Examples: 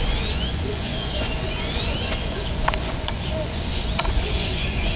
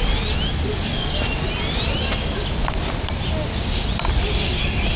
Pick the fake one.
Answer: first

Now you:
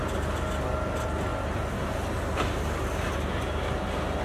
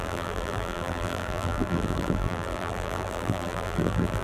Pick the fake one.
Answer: second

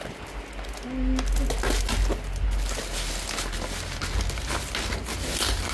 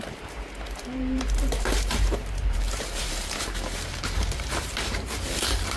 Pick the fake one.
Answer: second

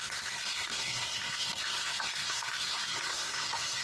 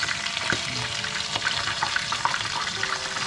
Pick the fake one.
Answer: first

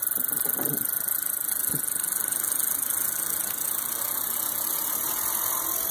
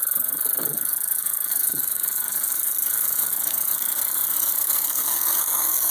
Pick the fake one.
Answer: second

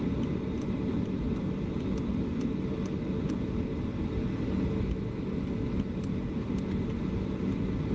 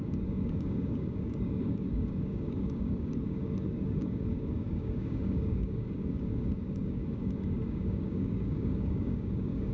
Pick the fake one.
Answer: second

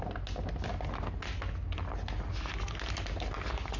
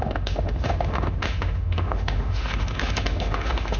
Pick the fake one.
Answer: second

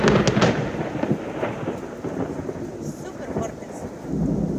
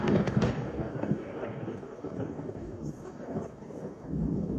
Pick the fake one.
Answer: second